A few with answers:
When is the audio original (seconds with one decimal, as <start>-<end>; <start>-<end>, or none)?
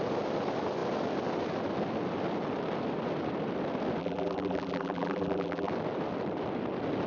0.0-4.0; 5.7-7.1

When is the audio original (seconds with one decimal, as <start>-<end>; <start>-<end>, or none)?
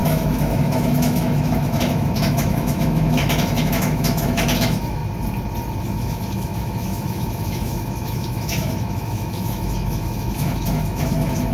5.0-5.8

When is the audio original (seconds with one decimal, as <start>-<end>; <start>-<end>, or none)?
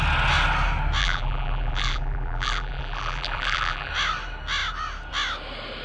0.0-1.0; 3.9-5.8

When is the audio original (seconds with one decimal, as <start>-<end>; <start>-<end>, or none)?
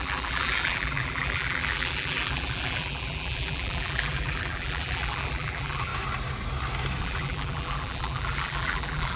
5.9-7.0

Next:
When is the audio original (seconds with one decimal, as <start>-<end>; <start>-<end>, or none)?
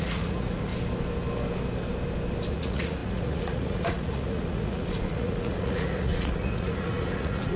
0.7-2.5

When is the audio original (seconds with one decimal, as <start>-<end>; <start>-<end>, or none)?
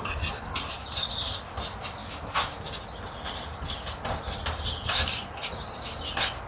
0.0-2.0; 2.6-6.5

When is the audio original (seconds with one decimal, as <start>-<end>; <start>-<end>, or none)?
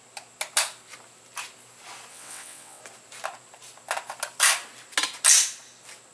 0.0-2.1; 2.8-6.1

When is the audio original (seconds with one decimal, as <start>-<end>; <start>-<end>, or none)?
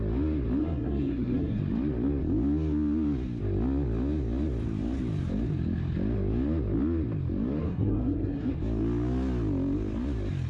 0.0-0.6; 1.6-7.6; 8.5-10.5